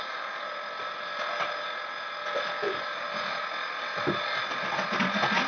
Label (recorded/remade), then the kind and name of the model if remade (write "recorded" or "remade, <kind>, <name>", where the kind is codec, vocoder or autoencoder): recorded